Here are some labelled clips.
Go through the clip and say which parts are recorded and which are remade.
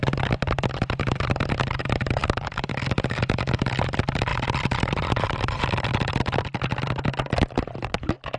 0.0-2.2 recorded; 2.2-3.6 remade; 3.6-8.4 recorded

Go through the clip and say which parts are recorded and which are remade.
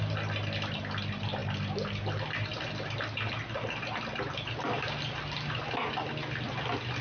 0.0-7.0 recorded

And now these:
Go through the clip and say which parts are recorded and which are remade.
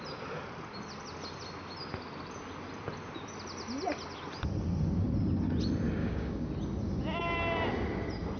0.0-6.0 recorded; 6.0-6.5 remade; 6.5-8.4 recorded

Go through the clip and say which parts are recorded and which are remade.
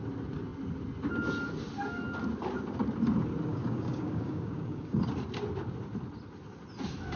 0.0-3.5 recorded; 3.5-5.0 remade; 5.0-7.2 recorded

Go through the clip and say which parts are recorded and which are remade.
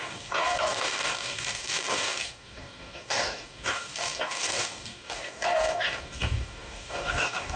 0.0-7.6 remade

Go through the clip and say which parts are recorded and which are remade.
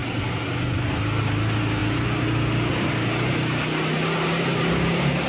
0.0-5.3 recorded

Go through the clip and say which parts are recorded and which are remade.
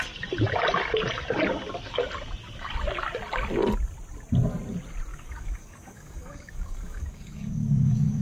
0.0-5.1 recorded; 5.1-8.2 remade